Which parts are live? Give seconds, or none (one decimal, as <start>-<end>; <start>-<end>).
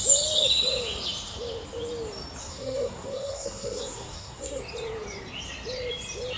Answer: 0.0-2.4; 4.6-6.4